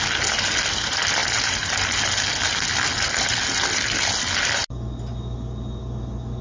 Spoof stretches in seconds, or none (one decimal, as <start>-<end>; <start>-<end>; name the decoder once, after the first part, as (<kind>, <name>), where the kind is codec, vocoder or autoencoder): none